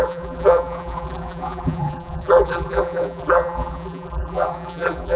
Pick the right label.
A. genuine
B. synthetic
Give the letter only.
B